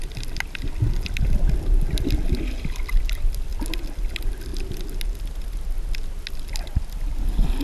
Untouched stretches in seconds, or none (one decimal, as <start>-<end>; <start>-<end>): 0.0-7.6